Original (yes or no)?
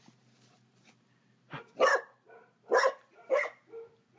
yes